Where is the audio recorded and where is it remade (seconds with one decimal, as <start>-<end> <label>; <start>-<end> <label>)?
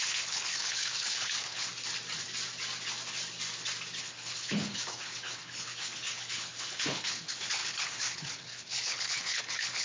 0.0-1.7 remade; 1.7-4.0 recorded; 4.0-9.8 remade